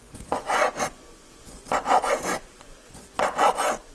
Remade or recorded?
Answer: remade